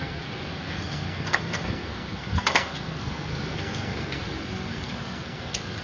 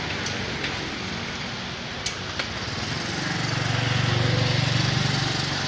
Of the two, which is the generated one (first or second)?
first